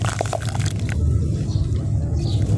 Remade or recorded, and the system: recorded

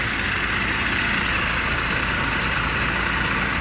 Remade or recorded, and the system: recorded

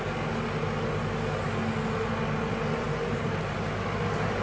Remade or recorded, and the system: recorded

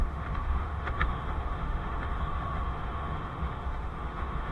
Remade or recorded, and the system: remade, autoencoder, DAC-VAE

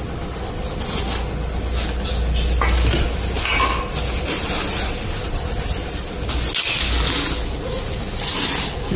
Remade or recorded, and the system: recorded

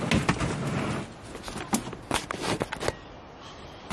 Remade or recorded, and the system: recorded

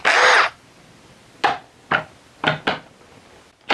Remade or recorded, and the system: recorded